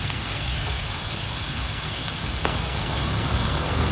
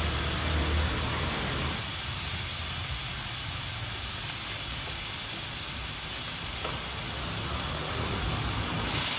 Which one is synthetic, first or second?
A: first